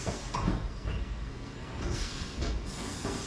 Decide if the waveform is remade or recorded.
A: remade